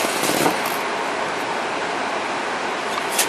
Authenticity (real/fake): real